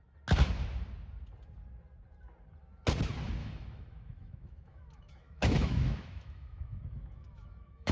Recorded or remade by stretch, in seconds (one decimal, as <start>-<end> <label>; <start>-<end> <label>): 0.0-3.4 recorded; 3.4-7.9 remade